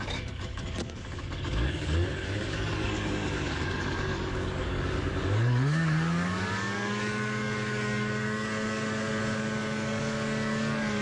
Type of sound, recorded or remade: remade